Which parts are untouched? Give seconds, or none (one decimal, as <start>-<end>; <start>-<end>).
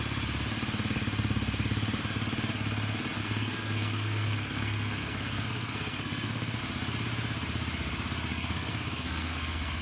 0.0-3.2; 6.6-8.3